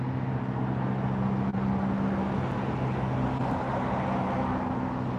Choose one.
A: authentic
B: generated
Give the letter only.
A